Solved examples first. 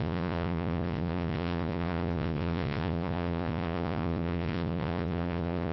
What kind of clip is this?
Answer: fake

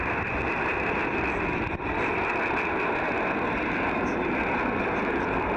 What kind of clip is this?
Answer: real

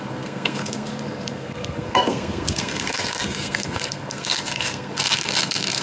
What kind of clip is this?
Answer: fake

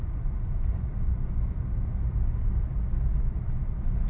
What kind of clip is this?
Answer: real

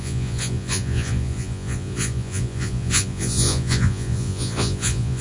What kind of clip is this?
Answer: fake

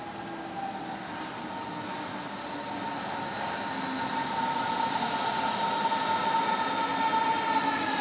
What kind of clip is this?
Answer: real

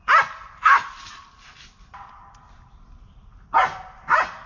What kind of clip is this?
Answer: real